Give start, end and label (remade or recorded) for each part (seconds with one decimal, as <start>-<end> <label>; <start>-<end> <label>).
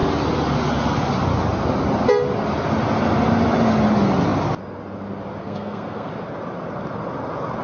0.0-5.4 recorded; 5.4-6.1 remade; 6.1-7.6 recorded